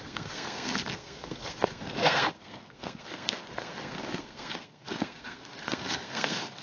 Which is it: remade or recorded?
remade